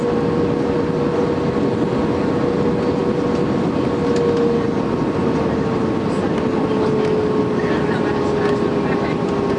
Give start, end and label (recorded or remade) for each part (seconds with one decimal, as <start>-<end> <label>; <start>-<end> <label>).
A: 0.0-9.6 recorded